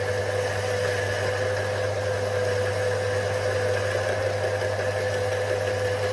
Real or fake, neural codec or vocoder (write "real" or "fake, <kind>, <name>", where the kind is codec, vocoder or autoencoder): real